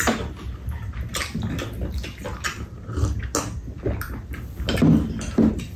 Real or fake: real